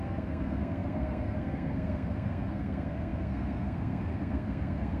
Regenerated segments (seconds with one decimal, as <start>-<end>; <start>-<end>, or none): 0.0-5.0